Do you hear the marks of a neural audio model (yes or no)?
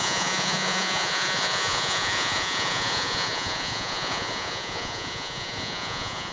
yes